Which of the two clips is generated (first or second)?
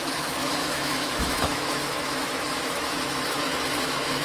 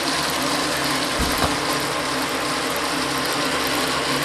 first